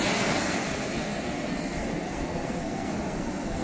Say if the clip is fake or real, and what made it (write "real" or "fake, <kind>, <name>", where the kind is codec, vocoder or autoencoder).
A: fake, codec, SNAC